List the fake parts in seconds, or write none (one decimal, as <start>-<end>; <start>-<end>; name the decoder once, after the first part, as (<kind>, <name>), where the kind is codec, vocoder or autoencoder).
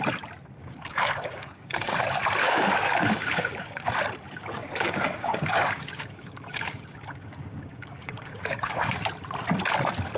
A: 0.6-2.0 (codec, DAC); 2.4-3.9; 4.6-8.9